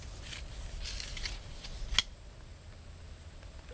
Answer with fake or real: real